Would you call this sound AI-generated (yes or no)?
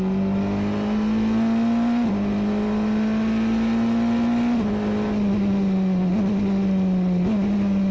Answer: no